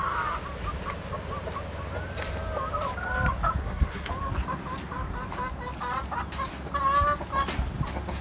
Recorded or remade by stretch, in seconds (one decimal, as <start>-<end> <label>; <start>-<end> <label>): 0.0-3.6 recorded; 3.6-4.1 remade; 4.1-8.2 recorded